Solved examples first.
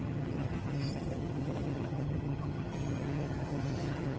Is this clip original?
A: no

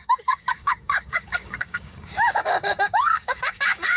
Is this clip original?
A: no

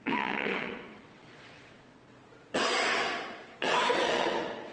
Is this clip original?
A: no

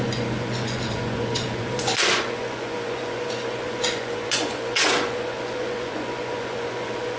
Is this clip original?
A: no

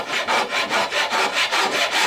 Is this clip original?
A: no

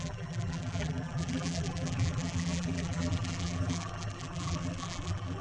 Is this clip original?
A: no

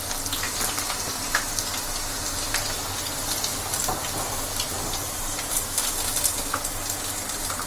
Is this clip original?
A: yes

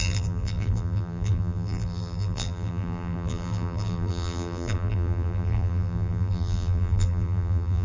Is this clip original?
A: no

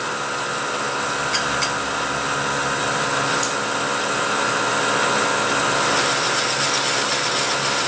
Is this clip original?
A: yes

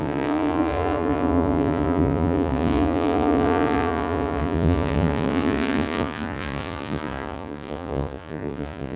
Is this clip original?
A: no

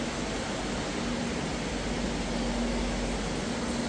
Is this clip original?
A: yes